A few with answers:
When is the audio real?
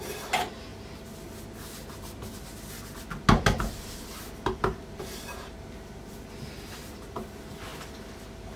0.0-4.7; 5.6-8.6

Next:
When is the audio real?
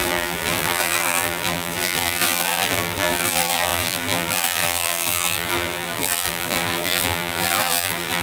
none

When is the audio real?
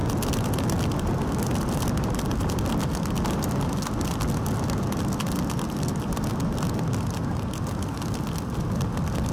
0.0-9.3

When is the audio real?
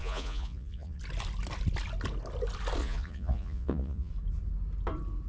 1.0-2.8; 4.1-5.3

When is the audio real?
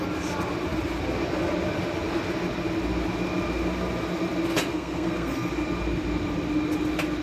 0.0-4.7; 5.3-7.2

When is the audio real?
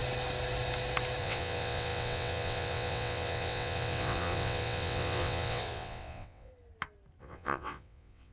0.0-1.2; 6.5-7.2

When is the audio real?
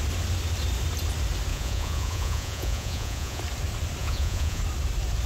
0.0-1.5; 3.4-4.0; 4.6-5.3